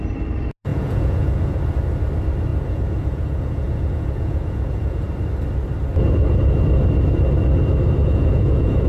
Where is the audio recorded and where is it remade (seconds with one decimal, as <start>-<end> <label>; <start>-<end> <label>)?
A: 0.0-0.7 recorded; 0.7-1.6 remade; 1.6-2.5 recorded; 2.5-5.1 remade; 5.1-8.0 recorded; 8.0-8.9 remade